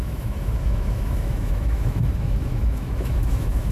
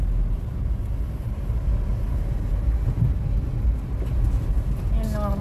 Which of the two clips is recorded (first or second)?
second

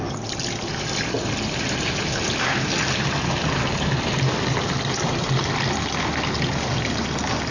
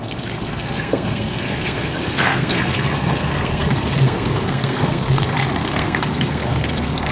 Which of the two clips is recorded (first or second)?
first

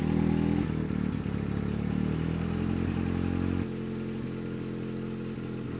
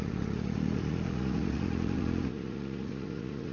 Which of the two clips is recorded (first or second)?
first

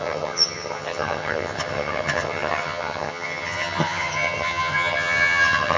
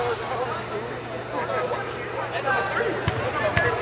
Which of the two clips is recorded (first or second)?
second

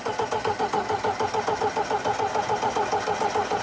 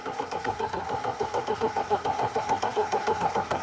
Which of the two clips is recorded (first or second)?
first